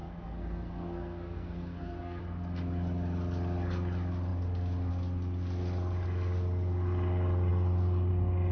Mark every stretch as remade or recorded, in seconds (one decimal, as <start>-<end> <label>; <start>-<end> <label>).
0.0-2.2 remade; 2.2-8.5 recorded